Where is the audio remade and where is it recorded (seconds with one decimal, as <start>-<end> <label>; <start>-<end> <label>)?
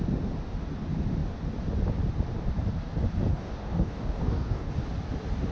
0.0-3.3 recorded; 3.3-4.7 remade; 4.7-5.5 recorded